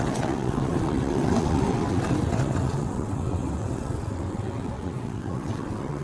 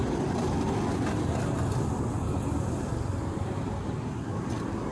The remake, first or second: first